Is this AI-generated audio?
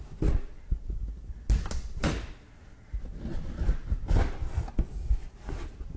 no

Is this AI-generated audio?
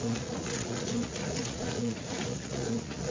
yes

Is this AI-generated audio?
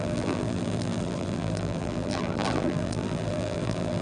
yes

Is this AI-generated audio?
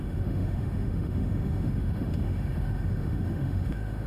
yes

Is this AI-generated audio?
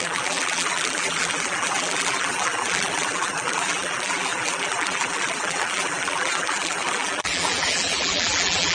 yes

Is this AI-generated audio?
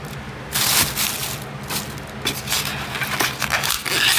no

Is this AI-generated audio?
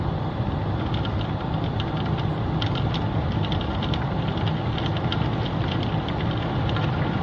no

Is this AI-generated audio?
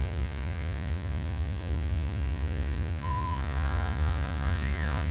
yes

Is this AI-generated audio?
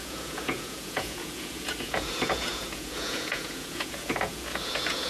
yes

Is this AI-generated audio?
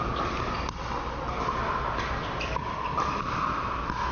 no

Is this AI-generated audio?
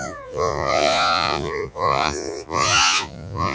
yes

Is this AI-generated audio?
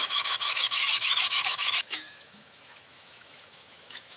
yes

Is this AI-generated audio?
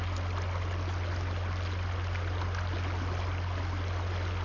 no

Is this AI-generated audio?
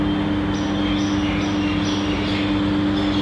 no